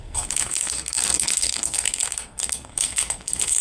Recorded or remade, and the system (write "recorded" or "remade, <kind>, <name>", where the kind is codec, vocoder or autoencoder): remade, codec, SNAC